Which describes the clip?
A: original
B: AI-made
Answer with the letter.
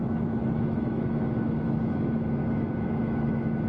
B